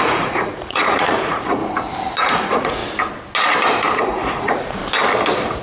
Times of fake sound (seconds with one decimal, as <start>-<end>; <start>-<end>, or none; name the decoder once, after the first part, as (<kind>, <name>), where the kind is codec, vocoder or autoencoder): 0.0-1.6 (vocoder, Vocos); 2.2-2.8; 4.0-4.8